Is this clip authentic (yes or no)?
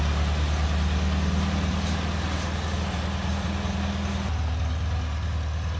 yes